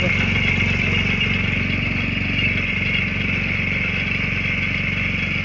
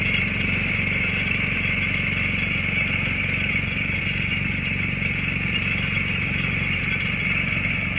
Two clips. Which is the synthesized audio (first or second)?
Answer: second